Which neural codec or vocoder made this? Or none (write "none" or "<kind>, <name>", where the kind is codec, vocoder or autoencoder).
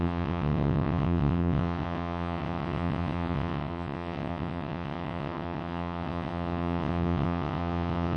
vocoder, WaveNeXt